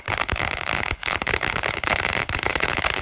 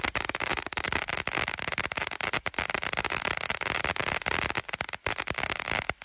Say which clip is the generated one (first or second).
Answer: first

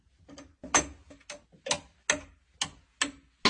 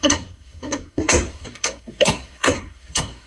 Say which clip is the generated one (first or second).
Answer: second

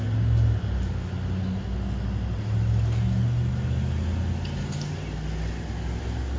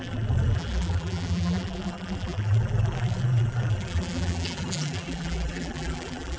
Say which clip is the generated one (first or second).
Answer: second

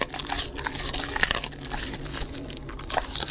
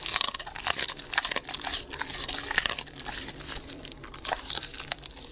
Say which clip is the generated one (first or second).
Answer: second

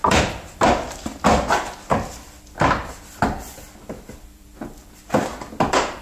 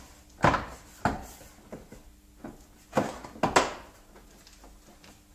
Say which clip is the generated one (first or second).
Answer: first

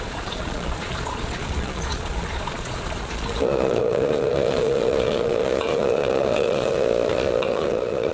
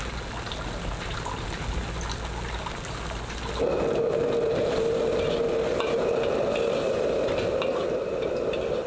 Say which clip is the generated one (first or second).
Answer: first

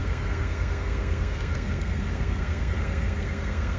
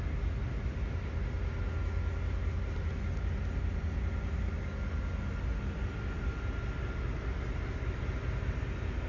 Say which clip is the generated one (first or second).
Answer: first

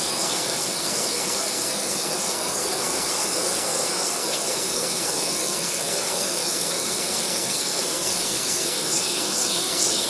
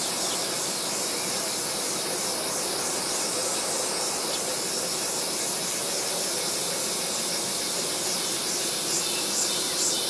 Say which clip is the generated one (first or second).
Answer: first